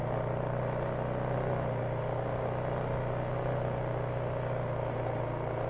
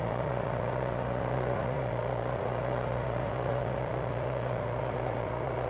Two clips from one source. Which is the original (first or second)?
first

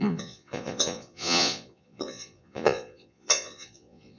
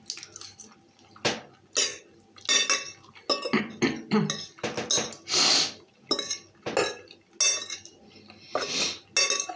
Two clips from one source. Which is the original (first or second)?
second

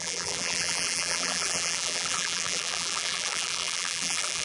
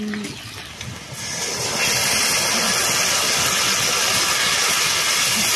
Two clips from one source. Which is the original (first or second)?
second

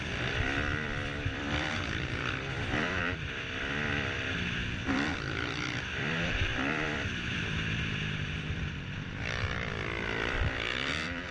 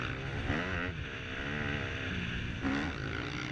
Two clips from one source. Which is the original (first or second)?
second